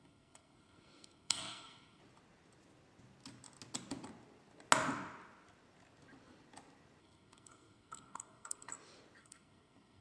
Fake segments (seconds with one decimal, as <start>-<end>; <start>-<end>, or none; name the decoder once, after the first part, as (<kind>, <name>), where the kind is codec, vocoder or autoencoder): 0.0-2.0 (codec, SNAC); 7.0-8.7; 9.2-10.0